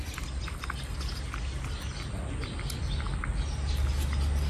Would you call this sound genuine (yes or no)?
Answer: yes